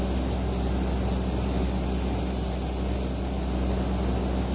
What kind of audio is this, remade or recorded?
recorded